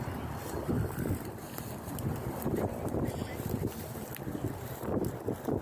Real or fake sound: real